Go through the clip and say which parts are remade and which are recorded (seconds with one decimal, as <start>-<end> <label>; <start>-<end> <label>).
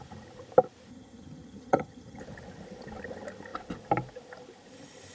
0.0-0.9 recorded; 0.9-2.2 remade; 2.2-5.1 recorded